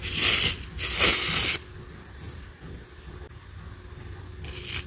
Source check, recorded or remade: recorded